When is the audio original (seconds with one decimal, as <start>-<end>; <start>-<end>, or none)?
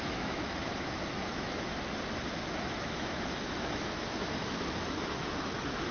1.7-2.5